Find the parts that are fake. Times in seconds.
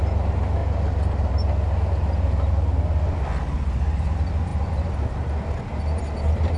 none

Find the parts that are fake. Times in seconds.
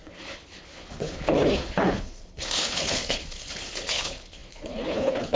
0.0-5.4 (codec, HILCodec)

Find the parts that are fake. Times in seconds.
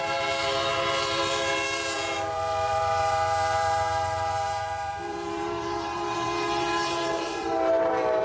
0.0-8.2 (vocoder, BigVGAN v2)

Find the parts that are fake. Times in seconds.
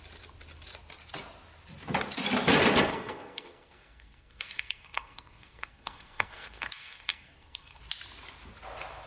2.9-7.8 (codec, SNAC)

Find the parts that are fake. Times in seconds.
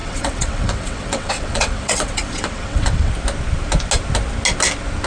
0.0-3.1 (vocoder, WaveNeXt)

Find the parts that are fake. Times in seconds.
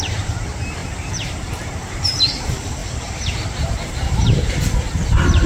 0.0-5.5 (vocoder, BigVGAN v2)